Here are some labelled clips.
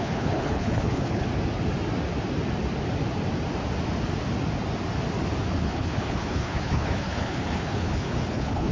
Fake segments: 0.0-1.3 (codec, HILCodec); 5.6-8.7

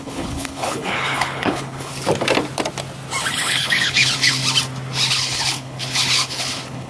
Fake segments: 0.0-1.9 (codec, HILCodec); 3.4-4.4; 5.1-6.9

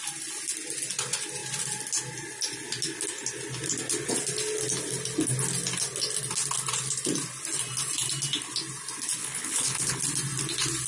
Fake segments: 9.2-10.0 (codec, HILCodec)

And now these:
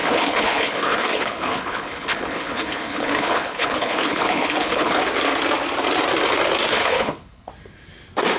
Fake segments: 0.0-5.0 (codec, HILCodec); 6.7-7.5

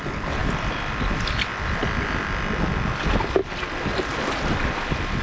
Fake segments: none

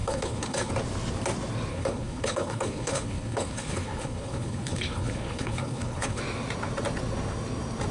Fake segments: 0.0-0.7 (codec, HILCodec); 1.7-6.2